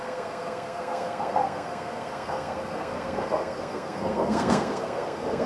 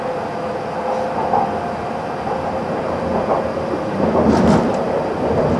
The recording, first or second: second